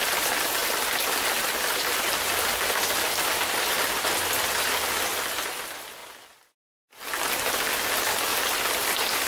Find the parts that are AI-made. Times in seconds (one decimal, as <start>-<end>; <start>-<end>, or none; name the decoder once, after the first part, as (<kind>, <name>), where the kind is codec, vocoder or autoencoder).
none